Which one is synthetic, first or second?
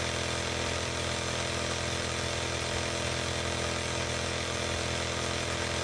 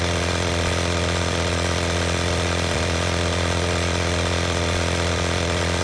second